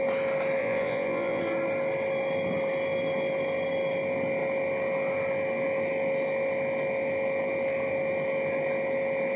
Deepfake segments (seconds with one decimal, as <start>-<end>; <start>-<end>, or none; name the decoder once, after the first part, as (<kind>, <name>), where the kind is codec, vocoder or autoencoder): 0.6-1.4 (vocoder, Vocos)